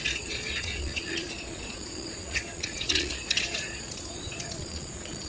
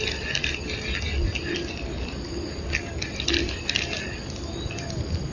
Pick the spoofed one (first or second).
first